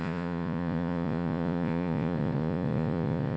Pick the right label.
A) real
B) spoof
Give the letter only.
B